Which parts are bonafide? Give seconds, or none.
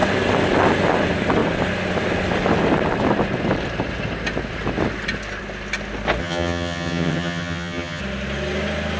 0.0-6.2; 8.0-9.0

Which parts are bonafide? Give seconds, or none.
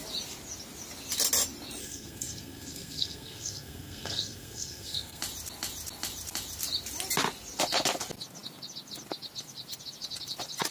0.0-1.8; 5.2-10.7